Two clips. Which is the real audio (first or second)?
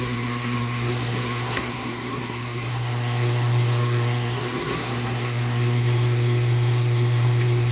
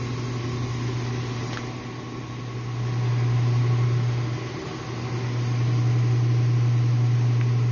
second